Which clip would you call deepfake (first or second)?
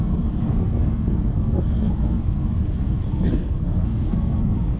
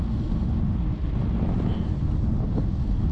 first